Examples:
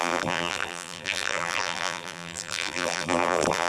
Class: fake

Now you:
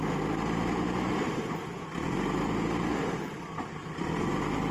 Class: real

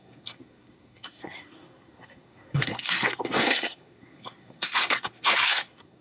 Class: fake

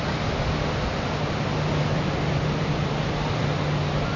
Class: real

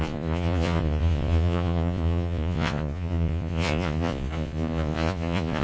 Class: fake